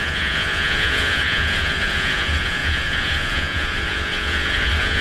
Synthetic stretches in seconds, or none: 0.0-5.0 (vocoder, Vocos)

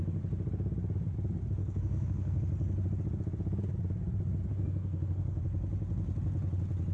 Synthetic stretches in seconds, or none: 1.6-2.4 (codec, SNAC); 4.5-5.4

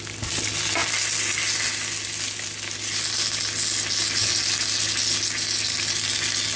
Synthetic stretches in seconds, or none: none

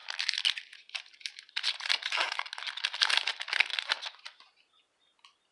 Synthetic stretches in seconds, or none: none